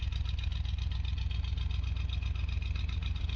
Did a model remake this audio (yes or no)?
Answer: no